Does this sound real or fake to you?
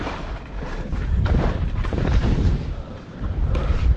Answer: fake